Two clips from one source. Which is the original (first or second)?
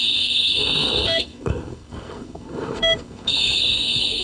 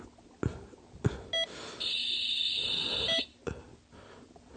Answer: second